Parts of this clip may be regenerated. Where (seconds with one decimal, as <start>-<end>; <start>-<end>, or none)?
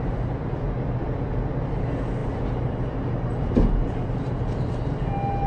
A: none